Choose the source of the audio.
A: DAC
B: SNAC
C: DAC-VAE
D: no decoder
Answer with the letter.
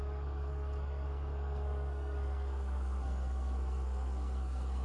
B